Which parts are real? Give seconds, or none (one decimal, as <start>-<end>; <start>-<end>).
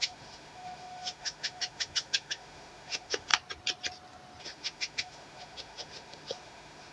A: 3.3-4.4